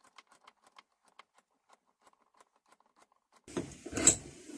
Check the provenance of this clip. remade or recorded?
recorded